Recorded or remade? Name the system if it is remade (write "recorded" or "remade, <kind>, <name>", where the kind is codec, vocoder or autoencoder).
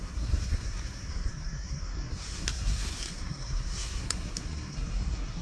remade, codec, SNAC